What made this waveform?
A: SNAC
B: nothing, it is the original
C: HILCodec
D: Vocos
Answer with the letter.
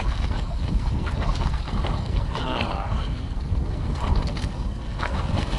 A